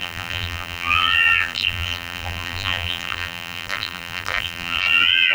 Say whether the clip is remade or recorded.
remade